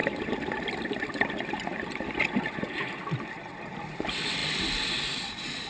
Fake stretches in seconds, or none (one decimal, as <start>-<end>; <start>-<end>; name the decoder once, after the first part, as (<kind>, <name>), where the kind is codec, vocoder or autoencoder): none